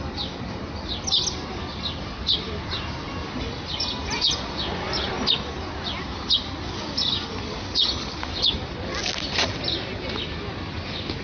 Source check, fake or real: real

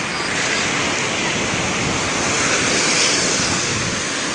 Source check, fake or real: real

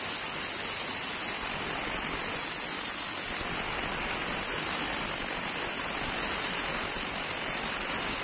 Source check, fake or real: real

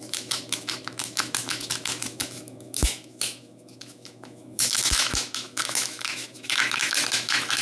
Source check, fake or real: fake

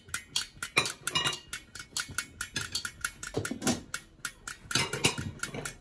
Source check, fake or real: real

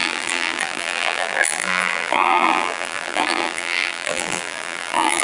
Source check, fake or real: fake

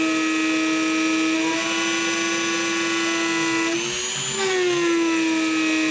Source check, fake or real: real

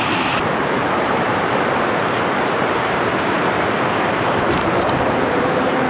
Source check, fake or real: fake